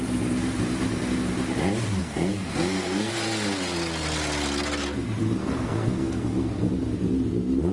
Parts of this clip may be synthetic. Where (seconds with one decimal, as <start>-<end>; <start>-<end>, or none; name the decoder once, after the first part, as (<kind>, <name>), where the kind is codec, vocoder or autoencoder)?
2.0-3.1 (codec, SNAC); 5.4-6.7